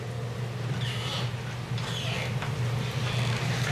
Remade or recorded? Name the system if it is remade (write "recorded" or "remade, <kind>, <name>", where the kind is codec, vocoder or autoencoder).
recorded